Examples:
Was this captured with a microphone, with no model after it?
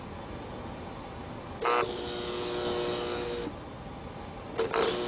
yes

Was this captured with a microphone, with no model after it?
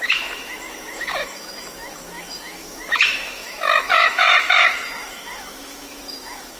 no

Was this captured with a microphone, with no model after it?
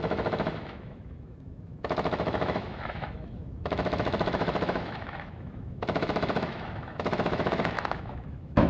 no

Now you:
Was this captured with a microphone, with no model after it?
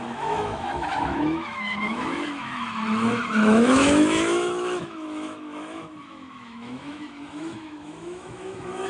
no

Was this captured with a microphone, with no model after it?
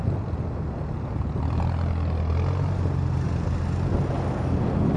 yes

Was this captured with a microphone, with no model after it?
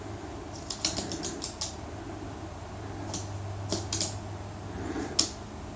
yes